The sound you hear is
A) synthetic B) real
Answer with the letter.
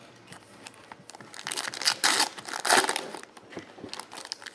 B